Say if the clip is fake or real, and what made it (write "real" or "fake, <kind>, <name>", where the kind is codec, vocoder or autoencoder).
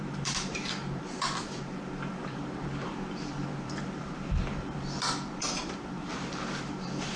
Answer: fake, vocoder, BigVGAN v2